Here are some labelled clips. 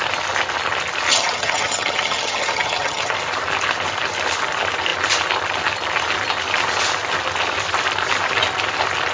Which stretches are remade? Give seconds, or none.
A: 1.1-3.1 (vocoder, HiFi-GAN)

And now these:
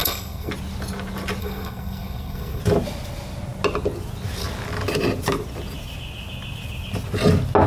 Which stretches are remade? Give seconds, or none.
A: 0.0-0.5 (codec, SNAC); 1.4-2.6

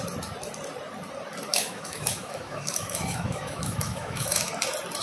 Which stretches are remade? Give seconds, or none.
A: 1.5-4.5 (autoencoder, DAC-VAE)

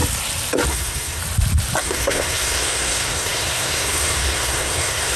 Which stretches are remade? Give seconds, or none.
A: 0.7-1.2 (codec, SNAC); 1.8-5.2

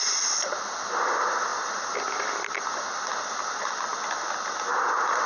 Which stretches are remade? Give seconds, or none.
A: none

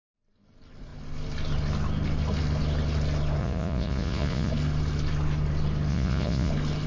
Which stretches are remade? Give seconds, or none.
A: 3.4-4.5 (vocoder, Vocos); 5.9-6.5

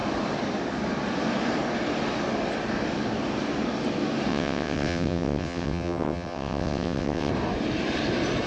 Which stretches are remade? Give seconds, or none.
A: 4.3-7.3 (vocoder, WaveNeXt)